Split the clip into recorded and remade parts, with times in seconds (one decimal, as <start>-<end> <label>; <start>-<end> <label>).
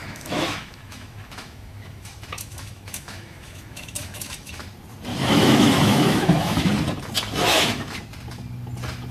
0.0-4.6 remade; 4.6-5.1 recorded; 5.1-6.7 remade; 6.7-7.5 recorded; 7.5-8.0 remade; 8.0-9.1 recorded